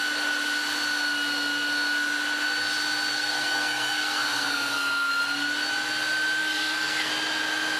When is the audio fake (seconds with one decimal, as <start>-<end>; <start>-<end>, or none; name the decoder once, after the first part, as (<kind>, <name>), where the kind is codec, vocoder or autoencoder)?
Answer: 3.1-5.1 (codec, SNAC); 6.4-7.1